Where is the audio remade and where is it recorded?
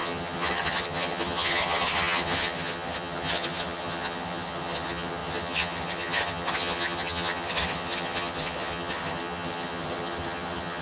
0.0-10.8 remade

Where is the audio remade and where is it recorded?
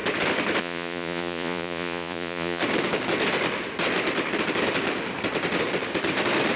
0.0-0.6 recorded; 0.6-2.6 remade; 2.6-6.6 recorded